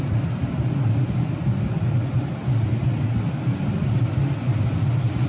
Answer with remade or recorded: recorded